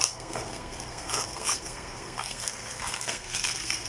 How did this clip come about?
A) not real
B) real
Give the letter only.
A